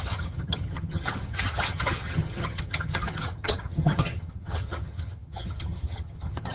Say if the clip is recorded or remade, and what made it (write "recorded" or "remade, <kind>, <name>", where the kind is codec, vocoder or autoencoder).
remade, vocoder, HiFi-GAN